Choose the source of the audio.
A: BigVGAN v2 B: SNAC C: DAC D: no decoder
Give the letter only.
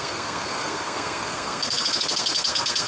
B